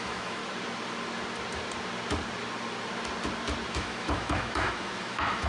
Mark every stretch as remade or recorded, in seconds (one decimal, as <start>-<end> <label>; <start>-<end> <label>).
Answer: 0.0-0.4 remade; 0.4-3.7 recorded; 3.7-5.5 remade